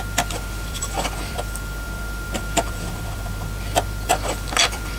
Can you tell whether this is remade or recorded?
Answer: remade